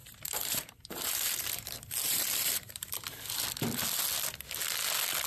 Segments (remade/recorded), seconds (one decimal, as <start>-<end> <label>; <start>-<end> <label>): 0.0-3.2 remade; 3.2-5.3 recorded